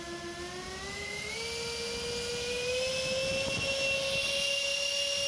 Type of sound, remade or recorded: recorded